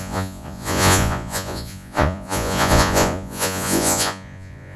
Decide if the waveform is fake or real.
fake